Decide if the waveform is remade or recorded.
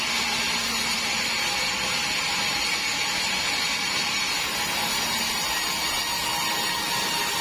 recorded